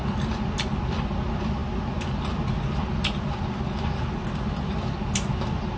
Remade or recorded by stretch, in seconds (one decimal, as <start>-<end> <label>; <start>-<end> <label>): 0.0-5.8 recorded